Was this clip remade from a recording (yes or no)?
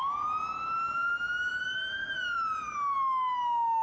no